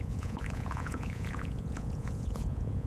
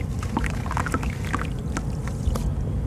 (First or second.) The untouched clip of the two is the second